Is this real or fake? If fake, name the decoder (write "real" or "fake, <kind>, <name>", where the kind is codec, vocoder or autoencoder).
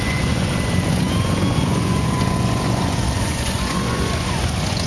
fake, vocoder, Vocos